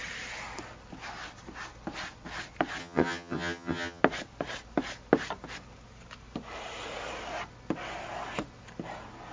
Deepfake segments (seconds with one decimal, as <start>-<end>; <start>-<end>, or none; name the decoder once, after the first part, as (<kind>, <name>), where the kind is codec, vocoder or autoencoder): 2.8-4.0 (vocoder, HiFi-GAN)